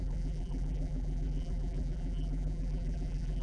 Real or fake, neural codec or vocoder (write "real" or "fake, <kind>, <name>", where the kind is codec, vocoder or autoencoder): fake, vocoder, BigVGAN v2